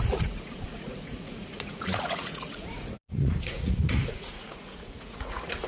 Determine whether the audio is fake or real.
fake